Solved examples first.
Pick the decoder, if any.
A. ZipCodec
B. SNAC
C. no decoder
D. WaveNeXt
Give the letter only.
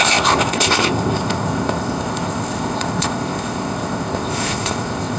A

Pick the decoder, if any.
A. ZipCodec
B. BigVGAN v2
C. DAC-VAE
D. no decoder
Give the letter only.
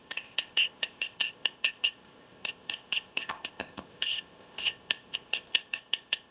A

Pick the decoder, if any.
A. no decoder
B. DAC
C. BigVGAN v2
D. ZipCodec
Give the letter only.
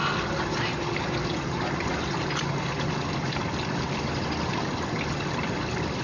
A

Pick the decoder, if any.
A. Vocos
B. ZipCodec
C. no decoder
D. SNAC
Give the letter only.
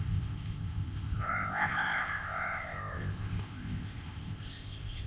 B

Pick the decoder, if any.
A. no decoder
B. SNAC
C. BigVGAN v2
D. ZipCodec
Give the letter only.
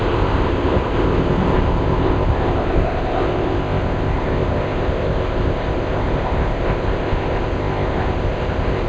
D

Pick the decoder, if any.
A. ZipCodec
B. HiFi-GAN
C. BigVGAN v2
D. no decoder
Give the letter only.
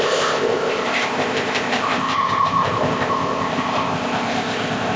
A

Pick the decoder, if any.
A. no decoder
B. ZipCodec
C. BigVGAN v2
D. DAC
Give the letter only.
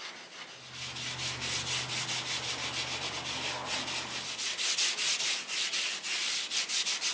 A